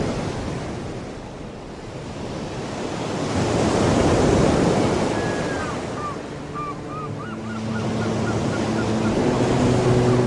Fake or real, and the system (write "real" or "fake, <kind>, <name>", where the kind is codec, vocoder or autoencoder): real